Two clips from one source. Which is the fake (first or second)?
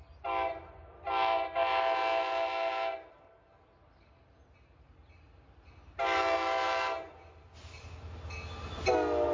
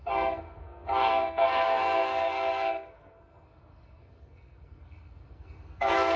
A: second